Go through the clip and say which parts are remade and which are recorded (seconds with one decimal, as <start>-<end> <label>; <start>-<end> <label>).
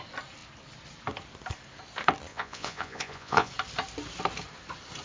0.0-2.3 recorded; 2.3-3.5 remade; 3.5-5.0 recorded